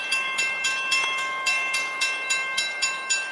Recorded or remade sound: remade